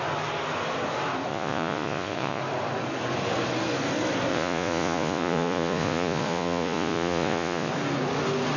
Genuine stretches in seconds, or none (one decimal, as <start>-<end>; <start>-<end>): 0.0-1.3; 2.4-4.3; 7.7-8.6